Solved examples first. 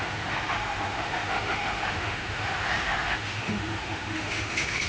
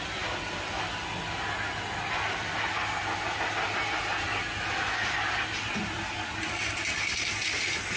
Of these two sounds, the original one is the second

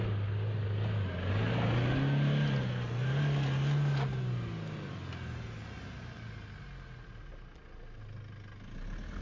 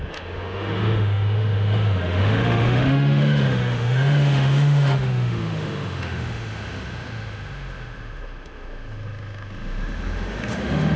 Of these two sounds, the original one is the first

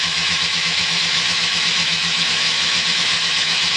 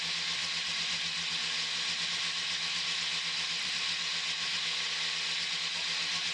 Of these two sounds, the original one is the second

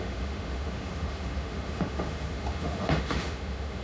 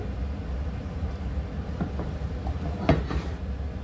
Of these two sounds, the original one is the second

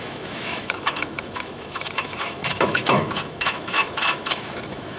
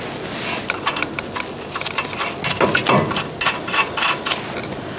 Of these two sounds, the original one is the second